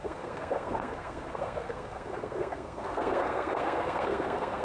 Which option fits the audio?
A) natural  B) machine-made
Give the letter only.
B